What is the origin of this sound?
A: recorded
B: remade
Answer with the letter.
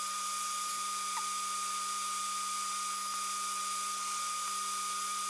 A